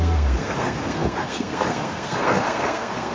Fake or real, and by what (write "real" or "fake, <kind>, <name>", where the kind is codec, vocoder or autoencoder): fake, codec, SNAC